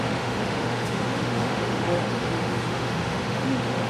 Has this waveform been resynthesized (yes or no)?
yes